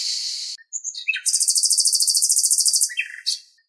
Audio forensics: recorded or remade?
recorded